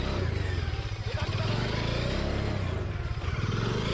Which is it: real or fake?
real